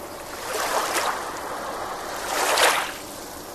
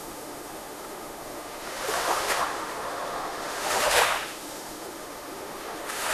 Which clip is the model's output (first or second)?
second